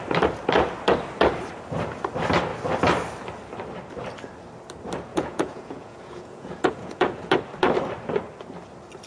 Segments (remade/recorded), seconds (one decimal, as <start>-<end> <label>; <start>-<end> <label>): 0.0-5.1 recorded; 5.1-7.3 remade; 7.3-9.1 recorded

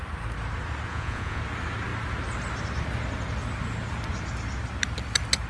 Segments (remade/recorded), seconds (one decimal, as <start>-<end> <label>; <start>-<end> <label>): 0.0-0.9 recorded; 0.9-1.4 remade; 1.4-5.5 recorded

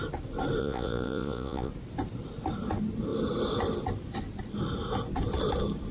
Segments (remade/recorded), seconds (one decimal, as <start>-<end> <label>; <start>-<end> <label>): 0.0-0.6 recorded; 0.6-1.7 remade; 1.7-5.9 recorded

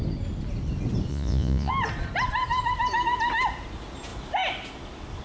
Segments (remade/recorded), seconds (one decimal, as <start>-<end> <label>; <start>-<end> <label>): 0.0-1.1 recorded; 1.1-1.7 remade; 1.7-5.2 recorded

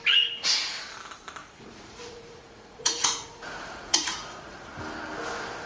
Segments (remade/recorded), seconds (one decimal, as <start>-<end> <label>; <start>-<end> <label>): 0.0-1.4 recorded; 1.4-4.8 remade; 4.8-5.7 recorded

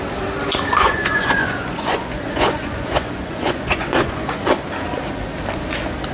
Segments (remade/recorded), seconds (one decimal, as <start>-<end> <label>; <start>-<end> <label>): 0.0-0.7 recorded; 0.7-4.4 remade; 4.4-6.1 recorded